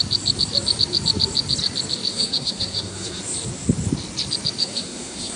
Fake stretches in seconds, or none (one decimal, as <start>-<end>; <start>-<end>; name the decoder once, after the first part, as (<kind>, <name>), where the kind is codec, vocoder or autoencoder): 2.1-3.2 (codec, SNAC); 4.6-5.4